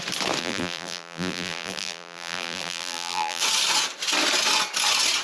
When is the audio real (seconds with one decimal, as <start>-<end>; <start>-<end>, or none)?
0.0-0.4; 3.4-5.2